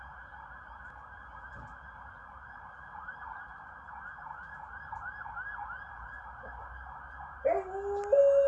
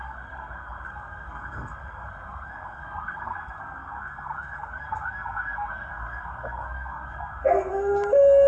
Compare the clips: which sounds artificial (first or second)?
second